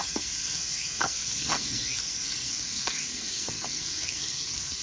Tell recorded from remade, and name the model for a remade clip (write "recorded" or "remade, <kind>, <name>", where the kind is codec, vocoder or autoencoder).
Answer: remade, codec, SNAC